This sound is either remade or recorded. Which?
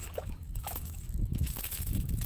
remade